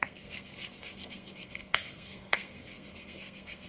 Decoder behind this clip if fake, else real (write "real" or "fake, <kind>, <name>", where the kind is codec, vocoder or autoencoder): fake, codec, SNAC